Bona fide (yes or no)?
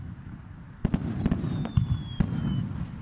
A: yes